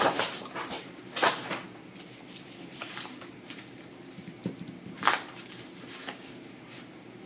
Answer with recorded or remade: remade